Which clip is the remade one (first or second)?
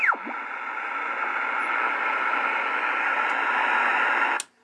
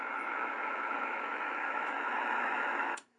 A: second